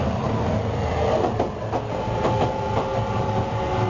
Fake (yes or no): no